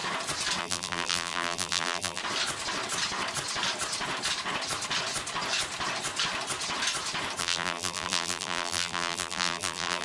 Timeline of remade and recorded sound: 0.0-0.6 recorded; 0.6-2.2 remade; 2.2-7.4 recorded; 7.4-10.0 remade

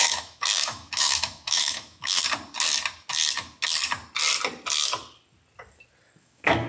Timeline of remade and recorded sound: 0.0-2.2 remade; 2.2-6.2 recorded; 6.2-6.7 remade

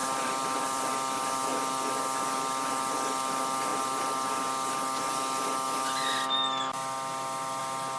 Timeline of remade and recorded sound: 0.0-0.9 remade; 0.9-8.0 recorded

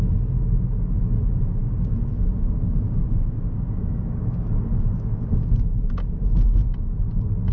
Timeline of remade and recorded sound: 0.0-7.5 recorded

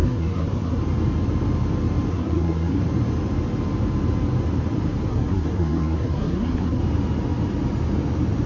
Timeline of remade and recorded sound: 0.0-0.8 remade; 0.8-2.1 recorded; 2.1-2.8 remade; 2.8-5.1 recorded; 5.1-6.8 remade; 6.8-8.5 recorded

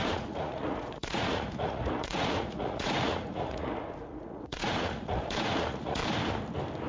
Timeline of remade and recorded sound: 0.0-6.0 remade; 6.0-6.9 recorded

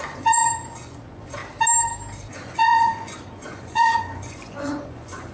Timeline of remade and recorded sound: 0.0-1.4 remade; 1.4-2.3 recorded; 2.3-5.3 remade